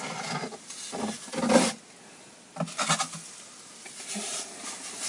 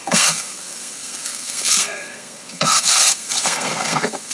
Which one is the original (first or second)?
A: first